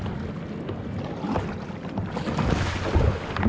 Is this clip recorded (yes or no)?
yes